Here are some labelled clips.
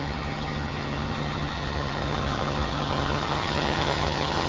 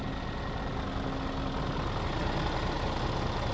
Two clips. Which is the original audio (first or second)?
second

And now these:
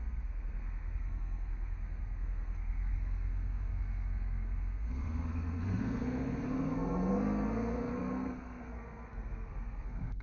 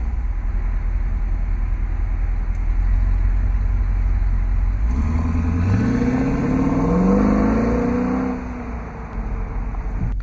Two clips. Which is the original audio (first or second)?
second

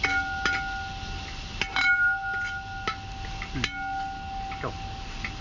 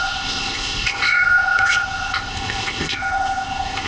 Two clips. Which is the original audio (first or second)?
first